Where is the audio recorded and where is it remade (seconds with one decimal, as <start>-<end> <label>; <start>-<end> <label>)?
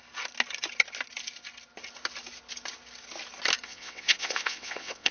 0.0-3.7 recorded; 3.7-5.1 remade